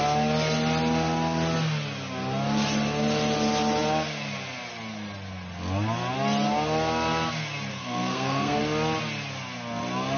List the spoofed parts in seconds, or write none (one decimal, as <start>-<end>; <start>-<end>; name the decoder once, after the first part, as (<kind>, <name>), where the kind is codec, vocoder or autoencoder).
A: 7.7-8.6 (codec, SNAC)